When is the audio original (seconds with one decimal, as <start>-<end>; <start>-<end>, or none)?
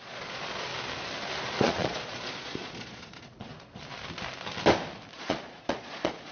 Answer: 0.7-1.6; 3.5-5.1